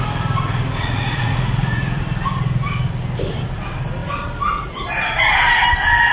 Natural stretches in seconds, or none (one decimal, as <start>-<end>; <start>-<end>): 0.0-0.8; 2.0-6.1